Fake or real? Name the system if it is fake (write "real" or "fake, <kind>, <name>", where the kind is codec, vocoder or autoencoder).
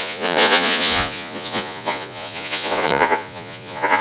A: fake, vocoder, Vocos